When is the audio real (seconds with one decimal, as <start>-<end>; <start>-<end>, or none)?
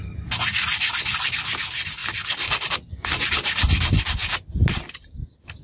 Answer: 0.0-5.6